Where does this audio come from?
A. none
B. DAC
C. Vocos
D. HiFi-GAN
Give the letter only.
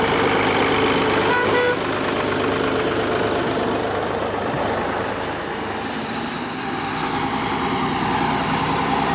A